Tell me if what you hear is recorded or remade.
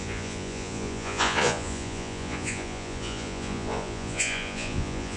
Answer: remade